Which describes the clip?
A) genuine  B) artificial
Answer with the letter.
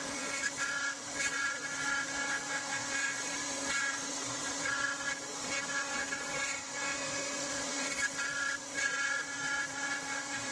B